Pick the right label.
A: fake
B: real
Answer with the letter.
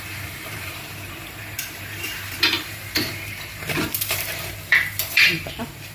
A